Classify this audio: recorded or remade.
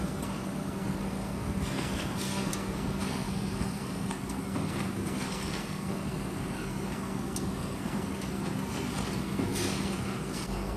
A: remade